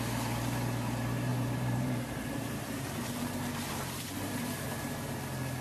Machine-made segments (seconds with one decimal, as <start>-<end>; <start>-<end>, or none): 1.3-4.7

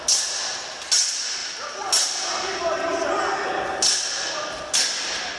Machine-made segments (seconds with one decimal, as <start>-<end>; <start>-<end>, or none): none